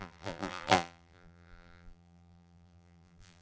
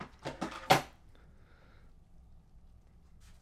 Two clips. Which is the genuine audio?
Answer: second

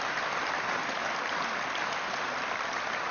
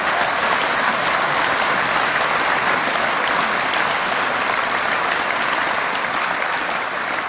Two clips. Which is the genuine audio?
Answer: second